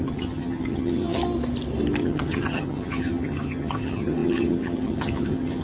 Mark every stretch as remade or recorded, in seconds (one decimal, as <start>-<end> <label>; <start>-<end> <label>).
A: 0.0-1.2 remade; 1.2-2.0 recorded; 2.0-5.6 remade